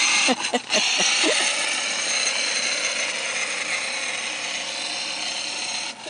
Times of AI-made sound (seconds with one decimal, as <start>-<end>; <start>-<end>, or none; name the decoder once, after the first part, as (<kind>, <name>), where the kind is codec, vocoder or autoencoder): 0.5-1.2 (vocoder, Vocos)